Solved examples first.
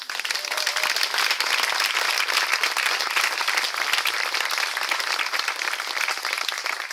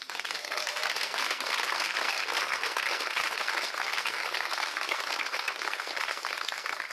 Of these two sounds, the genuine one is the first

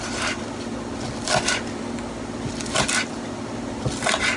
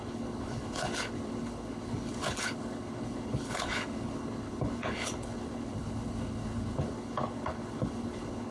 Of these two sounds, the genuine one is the first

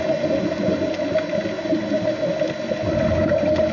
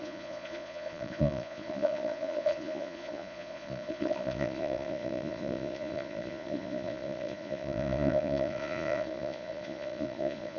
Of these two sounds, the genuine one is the first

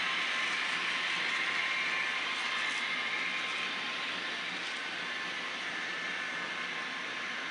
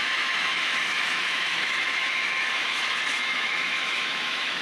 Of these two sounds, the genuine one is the first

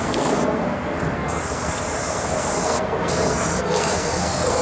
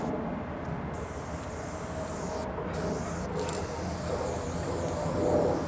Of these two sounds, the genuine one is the second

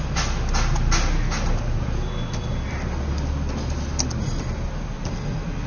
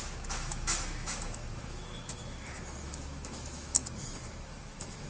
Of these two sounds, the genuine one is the first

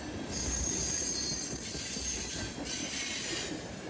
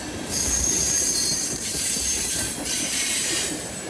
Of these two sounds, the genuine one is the first